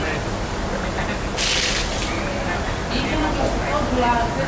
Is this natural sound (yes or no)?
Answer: yes